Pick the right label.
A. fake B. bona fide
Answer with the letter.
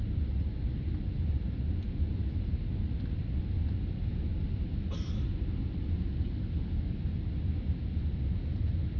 B